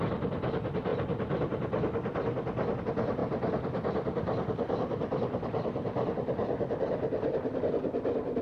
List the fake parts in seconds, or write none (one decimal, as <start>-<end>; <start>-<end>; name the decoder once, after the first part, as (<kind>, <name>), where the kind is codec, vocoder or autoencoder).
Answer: none